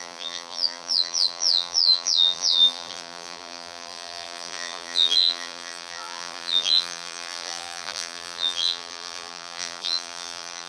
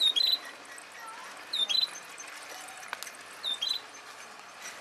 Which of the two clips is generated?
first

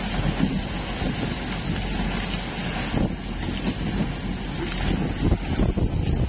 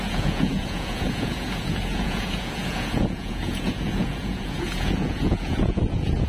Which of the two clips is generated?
second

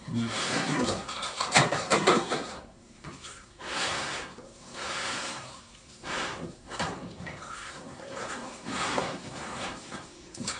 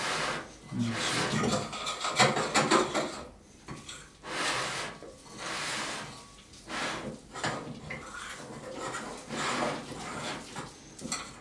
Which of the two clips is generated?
first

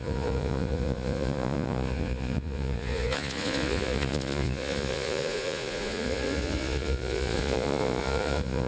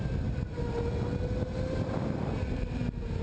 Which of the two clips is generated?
first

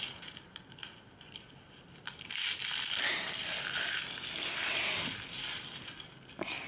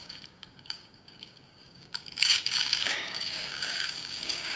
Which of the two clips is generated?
second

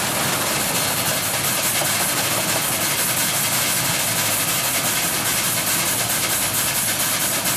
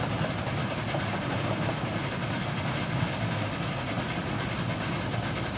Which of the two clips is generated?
second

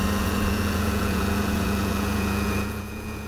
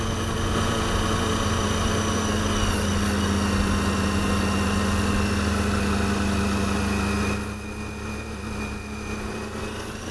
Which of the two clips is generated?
first